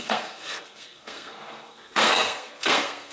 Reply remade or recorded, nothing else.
remade